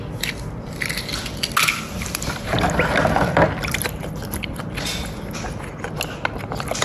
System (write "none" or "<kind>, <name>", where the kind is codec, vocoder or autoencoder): none